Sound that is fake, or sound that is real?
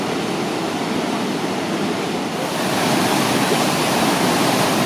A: fake